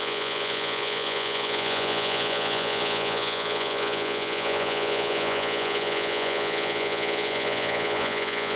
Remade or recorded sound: remade